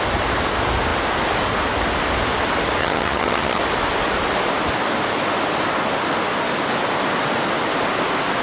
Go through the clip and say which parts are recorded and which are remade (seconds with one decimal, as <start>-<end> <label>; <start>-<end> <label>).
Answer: 0.0-2.8 recorded; 2.8-3.6 remade; 3.6-8.4 recorded